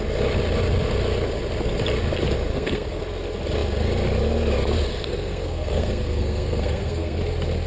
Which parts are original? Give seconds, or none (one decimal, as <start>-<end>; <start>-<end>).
0.0-2.5; 3.0-4.9; 7.2-7.7

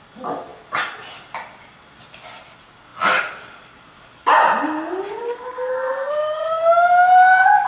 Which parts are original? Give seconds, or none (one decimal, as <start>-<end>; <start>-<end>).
0.0-5.2; 6.6-7.7

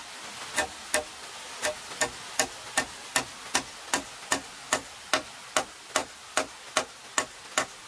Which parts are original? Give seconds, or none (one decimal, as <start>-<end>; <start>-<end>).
0.0-7.9

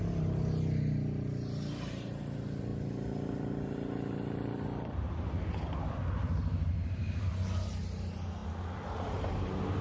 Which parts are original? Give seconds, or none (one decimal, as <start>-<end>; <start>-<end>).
0.0-9.8

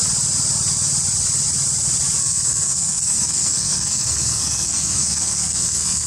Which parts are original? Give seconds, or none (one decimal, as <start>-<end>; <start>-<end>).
0.0-2.2

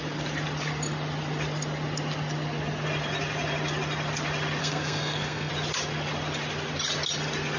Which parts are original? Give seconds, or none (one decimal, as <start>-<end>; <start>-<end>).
0.0-4.6; 5.5-7.6